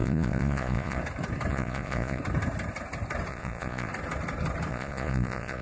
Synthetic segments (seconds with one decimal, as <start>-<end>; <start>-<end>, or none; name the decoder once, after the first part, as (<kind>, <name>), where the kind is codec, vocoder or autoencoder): 0.0-1.0 (vocoder, Vocos); 1.5-2.2; 3.3-3.9; 4.7-5.6